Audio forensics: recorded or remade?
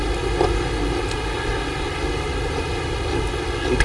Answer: recorded